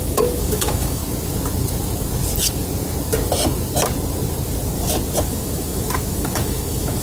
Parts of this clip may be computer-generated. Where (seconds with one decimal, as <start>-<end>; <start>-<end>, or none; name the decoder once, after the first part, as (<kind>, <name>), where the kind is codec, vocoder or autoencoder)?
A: 0.0-1.0 (autoencoder, DAC-VAE); 5.2-7.0